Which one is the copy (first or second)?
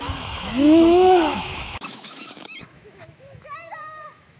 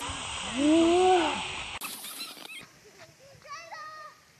first